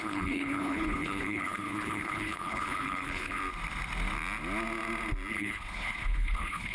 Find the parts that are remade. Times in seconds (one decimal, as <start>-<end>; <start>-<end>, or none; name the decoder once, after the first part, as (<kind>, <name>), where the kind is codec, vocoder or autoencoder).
0.0-3.4 (codec, HILCodec); 5.3-6.7